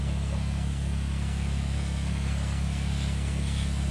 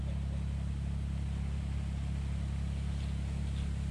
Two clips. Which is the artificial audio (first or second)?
first